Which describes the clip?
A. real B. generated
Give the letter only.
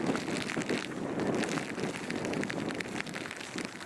A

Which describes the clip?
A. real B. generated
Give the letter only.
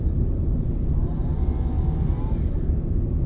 A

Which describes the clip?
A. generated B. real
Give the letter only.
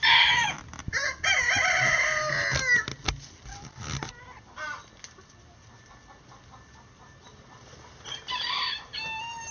B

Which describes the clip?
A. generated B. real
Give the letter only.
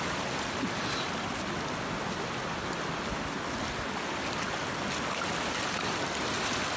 B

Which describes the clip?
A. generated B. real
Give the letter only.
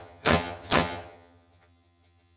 A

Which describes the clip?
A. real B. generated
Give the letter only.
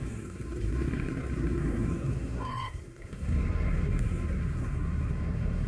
B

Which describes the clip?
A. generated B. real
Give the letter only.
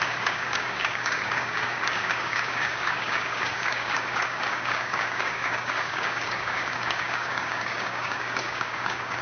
A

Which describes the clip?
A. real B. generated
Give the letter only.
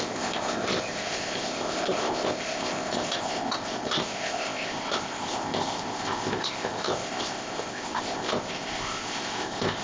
B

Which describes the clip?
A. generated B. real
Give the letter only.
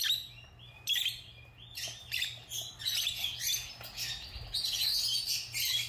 B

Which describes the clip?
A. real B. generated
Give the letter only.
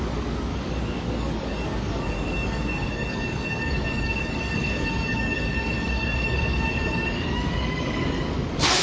B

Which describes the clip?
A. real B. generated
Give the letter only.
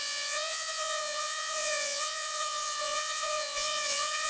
B